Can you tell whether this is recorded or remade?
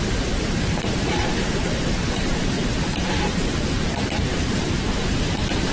remade